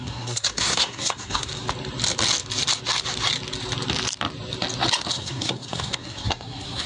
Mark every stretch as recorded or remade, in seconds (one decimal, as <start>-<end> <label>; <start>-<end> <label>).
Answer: 0.0-1.5 remade; 1.5-5.1 recorded; 5.1-6.9 remade